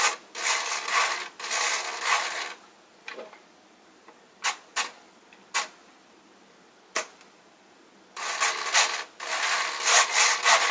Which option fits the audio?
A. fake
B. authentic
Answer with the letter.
B